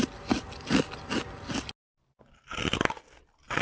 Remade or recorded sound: recorded